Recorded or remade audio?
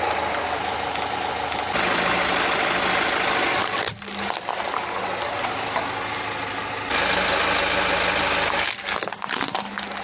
recorded